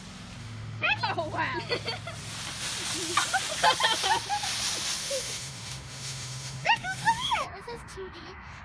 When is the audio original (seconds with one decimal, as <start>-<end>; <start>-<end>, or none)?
0.0-0.4; 1.0-5.0